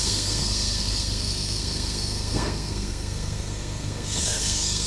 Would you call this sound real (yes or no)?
no